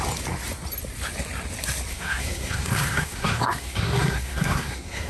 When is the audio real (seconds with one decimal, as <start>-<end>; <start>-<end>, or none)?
0.0-1.9